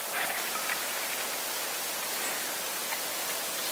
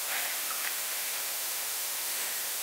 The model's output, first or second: second